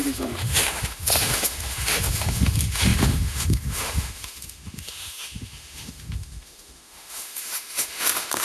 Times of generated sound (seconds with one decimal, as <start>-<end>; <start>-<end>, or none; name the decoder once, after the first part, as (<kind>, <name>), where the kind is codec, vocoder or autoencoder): 0.0-8.4 (autoencoder, DAC-VAE)